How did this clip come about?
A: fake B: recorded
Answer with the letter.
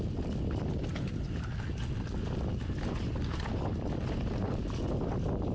B